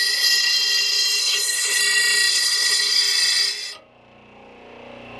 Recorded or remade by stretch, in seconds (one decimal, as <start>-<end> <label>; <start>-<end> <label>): 0.0-1.2 recorded; 1.2-1.8 remade; 1.8-2.3 recorded; 2.3-3.0 remade; 3.0-5.2 recorded